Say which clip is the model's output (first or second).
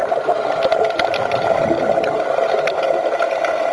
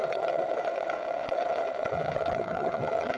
second